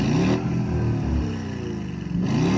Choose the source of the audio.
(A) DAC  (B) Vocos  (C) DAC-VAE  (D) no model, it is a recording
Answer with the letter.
D